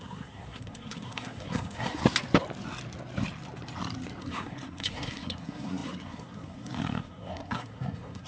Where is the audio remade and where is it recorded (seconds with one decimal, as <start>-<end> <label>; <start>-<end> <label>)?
0.0-2.0 remade; 2.0-4.2 recorded; 4.2-8.3 remade